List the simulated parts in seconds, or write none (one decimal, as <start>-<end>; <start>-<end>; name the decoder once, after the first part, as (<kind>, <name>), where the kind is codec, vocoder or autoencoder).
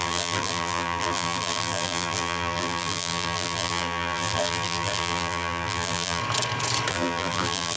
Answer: 0.0-6.2 (vocoder, BigVGAN v2); 6.9-7.8